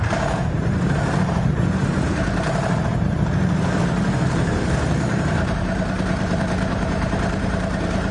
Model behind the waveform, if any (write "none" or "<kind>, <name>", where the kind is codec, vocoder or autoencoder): vocoder, BigVGAN v2